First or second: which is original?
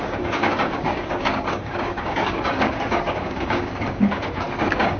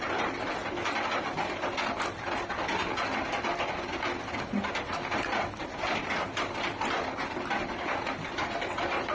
second